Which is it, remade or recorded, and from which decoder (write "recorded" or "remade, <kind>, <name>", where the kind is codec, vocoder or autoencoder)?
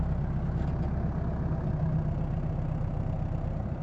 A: recorded